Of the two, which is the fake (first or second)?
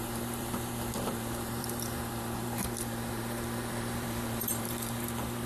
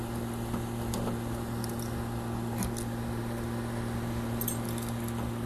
first